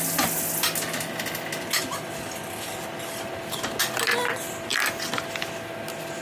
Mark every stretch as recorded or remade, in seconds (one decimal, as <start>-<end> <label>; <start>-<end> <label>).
0.0-6.2 recorded